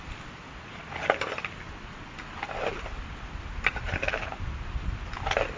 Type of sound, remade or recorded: recorded